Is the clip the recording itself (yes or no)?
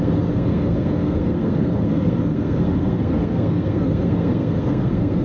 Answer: no